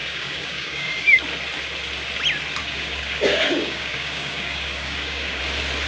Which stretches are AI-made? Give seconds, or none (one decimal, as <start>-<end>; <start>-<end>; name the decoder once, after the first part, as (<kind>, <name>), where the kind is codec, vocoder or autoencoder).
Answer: 0.0-1.2 (codec, DAC); 2.6-5.4